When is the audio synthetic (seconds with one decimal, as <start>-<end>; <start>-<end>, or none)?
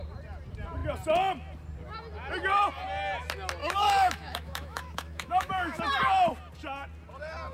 3.6-5.8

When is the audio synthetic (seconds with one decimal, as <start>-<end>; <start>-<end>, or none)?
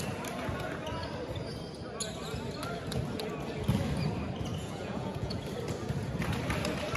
4.6-5.4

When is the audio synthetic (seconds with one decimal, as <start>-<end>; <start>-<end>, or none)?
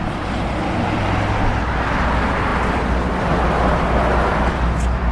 none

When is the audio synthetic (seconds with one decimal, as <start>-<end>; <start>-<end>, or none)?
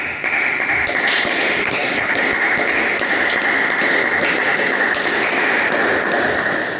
1.6-2.2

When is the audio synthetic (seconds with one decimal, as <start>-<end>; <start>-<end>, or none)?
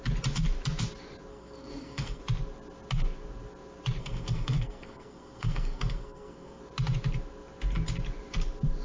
1.3-2.2; 4.0-6.6